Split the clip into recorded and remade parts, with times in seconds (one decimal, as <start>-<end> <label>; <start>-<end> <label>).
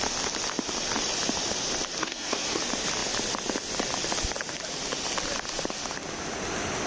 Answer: 0.0-2.0 recorded; 2.0-2.6 remade; 2.6-6.9 recorded